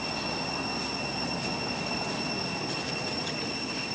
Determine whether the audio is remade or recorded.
recorded